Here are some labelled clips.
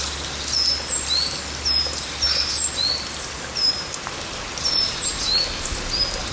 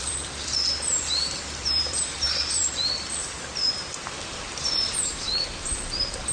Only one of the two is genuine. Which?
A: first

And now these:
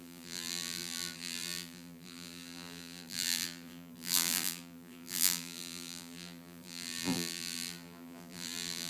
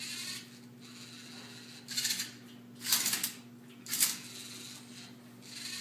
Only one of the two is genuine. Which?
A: second